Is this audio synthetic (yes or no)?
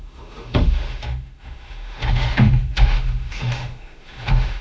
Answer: yes